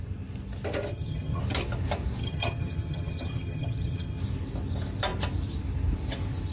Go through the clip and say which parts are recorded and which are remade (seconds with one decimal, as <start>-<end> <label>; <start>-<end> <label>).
0.0-0.9 recorded; 0.9-1.4 remade; 1.4-2.2 recorded; 2.2-4.2 remade; 4.2-6.5 recorded